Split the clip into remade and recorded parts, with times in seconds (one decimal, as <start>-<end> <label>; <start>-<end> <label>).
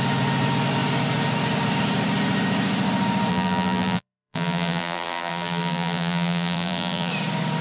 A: 0.0-3.3 recorded; 3.3-7.1 remade; 7.1-7.6 recorded